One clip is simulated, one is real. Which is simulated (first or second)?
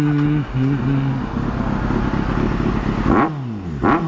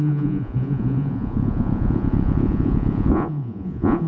second